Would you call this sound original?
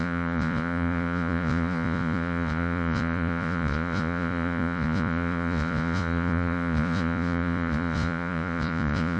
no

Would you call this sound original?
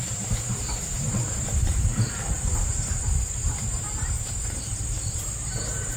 no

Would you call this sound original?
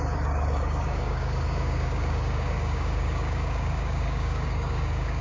no